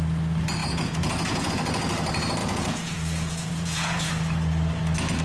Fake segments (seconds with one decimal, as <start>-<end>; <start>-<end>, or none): 0.6-1.5; 2.4-4.1